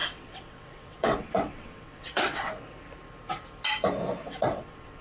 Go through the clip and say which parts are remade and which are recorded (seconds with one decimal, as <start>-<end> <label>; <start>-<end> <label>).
0.0-2.5 remade; 2.5-4.2 recorded; 4.2-5.0 remade